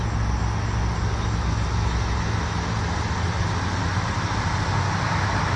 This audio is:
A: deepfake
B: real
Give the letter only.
B